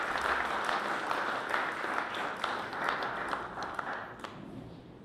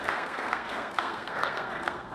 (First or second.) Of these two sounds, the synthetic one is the second